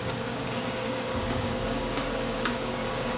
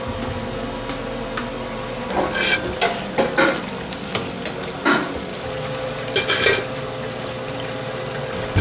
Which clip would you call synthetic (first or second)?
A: first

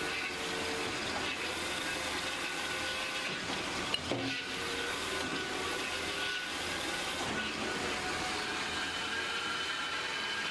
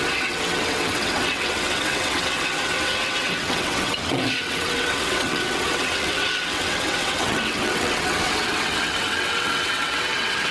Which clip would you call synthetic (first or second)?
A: second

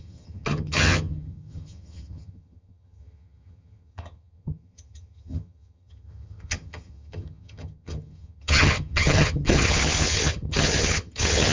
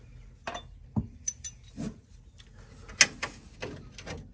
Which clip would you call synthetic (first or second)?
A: first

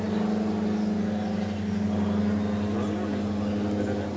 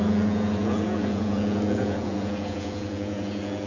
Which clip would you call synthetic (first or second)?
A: second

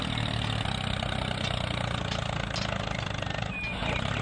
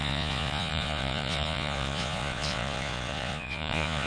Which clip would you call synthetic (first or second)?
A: second